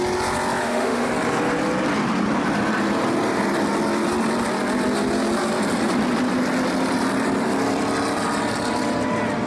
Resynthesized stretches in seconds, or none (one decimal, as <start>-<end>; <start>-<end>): 0.6-1.1